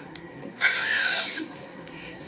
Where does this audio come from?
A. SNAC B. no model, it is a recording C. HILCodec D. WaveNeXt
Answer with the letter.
A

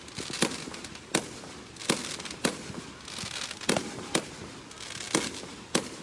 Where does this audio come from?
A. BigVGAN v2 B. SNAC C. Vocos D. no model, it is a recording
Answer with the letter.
D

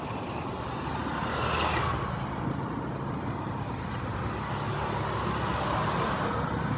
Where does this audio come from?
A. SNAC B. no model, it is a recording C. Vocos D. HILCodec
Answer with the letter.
B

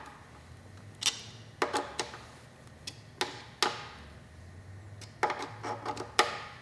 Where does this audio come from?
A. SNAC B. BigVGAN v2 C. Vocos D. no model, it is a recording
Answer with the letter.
D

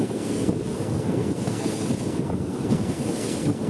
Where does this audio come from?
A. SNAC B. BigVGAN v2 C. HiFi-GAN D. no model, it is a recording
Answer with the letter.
A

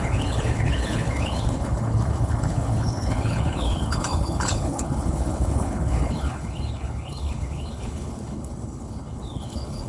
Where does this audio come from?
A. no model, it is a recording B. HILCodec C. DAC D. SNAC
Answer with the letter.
B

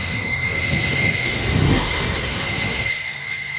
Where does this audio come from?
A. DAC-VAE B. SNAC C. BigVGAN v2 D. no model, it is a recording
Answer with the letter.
B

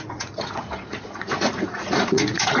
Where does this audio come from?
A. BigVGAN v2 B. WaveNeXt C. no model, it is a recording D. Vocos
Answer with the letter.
D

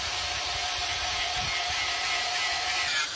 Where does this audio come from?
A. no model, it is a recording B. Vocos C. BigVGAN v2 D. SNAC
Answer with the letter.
C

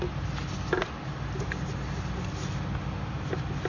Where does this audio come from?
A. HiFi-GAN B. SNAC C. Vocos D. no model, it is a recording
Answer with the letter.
D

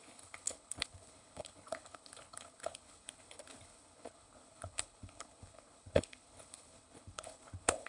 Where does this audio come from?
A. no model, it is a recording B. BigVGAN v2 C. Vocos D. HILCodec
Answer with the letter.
D